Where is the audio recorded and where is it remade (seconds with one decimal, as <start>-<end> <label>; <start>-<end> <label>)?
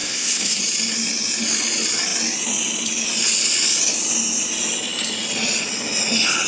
0.0-0.6 remade; 0.6-6.5 recorded